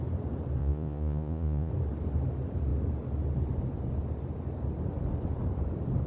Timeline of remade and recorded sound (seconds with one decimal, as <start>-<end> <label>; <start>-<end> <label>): 0.0-0.6 recorded; 0.6-1.7 remade; 1.7-6.1 recorded